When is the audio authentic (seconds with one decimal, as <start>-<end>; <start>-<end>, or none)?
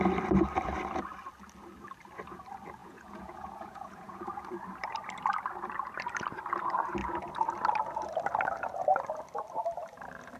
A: 0.0-2.8; 4.2-10.4